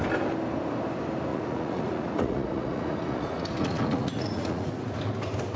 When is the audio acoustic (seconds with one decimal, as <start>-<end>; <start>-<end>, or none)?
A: 0.0-1.3; 4.7-5.6